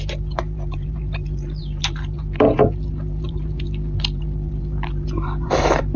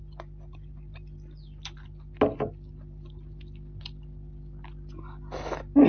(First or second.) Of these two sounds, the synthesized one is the first